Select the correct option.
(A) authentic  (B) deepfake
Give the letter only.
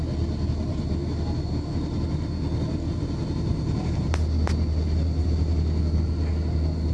A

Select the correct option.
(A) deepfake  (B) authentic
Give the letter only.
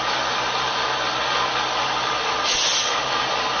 B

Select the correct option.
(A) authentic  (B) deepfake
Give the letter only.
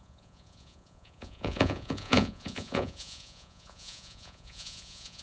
B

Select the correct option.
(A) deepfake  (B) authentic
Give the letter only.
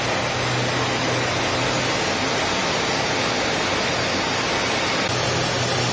B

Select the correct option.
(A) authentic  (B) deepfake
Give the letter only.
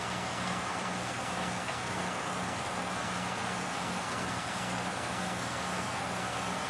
B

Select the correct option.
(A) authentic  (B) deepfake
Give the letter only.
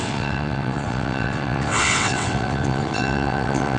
B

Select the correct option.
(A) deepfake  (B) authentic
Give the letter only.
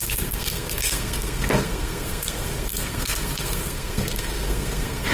A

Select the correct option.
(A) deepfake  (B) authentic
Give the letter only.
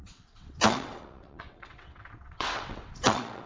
A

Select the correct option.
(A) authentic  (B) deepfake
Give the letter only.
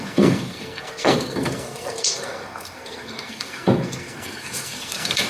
B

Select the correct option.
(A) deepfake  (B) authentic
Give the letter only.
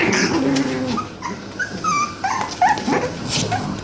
B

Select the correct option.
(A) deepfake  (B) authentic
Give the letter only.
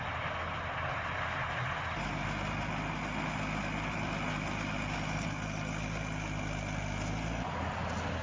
B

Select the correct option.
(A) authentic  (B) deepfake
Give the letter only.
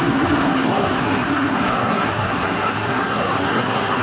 B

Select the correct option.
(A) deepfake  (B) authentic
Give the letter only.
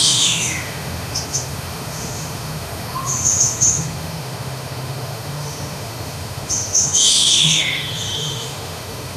A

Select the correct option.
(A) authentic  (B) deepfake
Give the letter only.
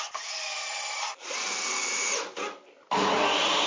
A